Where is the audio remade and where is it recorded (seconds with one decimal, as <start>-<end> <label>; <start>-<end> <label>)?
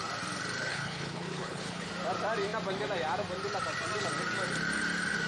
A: 0.0-0.7 recorded; 0.7-1.9 remade; 1.9-5.3 recorded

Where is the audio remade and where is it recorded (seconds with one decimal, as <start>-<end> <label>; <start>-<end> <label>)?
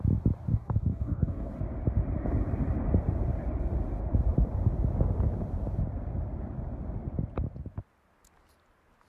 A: 0.0-0.5 recorded; 0.5-1.5 remade; 1.5-9.1 recorded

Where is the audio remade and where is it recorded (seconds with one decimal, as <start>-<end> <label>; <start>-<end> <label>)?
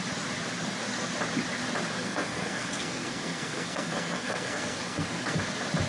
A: 0.0-2.0 recorded; 2.0-5.4 remade; 5.4-5.9 recorded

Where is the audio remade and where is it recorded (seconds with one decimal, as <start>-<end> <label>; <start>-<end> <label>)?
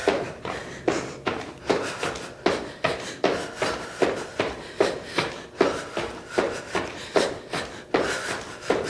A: 0.0-2.0 remade; 2.0-8.9 recorded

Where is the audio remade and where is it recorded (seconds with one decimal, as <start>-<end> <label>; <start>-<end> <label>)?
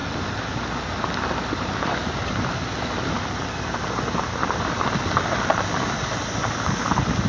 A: 0.0-7.3 recorded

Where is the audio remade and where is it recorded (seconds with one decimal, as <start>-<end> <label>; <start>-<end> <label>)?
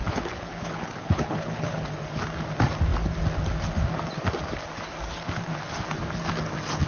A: 0.0-1.9 remade; 1.9-6.9 recorded